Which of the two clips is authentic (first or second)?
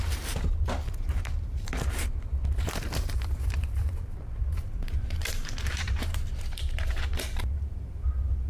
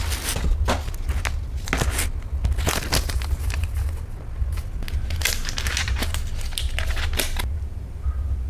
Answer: second